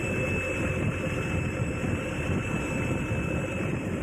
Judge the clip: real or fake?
real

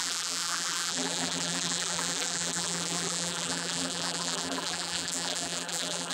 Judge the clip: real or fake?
fake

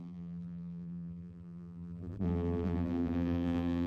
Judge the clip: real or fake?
fake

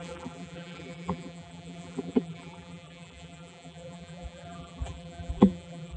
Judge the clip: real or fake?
fake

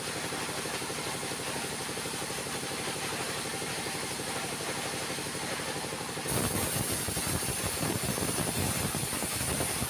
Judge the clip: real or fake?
fake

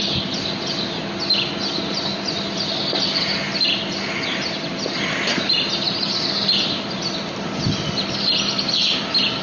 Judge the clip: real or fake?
real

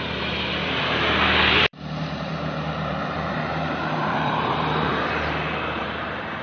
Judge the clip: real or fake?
fake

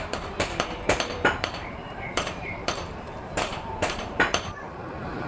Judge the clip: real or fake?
fake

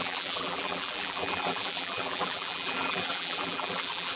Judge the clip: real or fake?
fake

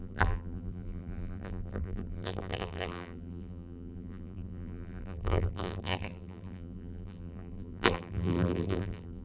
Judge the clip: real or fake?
fake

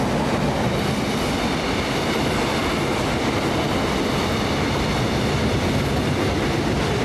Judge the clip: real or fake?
real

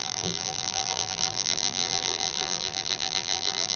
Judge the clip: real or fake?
fake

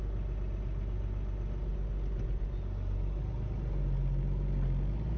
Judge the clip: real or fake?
real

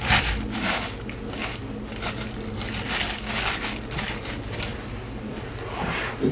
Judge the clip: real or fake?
real